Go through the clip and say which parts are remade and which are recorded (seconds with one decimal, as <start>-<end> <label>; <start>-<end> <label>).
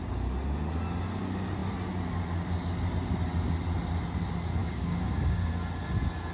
0.0-4.6 recorded; 4.6-5.5 remade; 5.5-6.3 recorded